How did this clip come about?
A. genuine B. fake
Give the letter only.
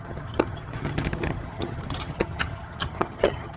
B